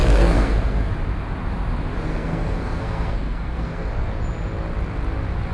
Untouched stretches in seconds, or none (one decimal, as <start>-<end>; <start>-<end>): 0.9-2.1; 3.9-5.5